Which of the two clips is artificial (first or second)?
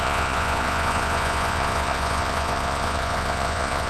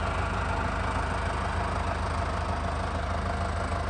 first